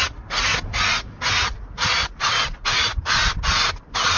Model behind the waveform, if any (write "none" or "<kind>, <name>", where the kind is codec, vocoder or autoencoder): none